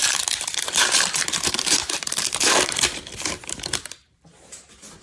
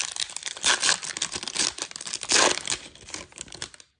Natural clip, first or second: second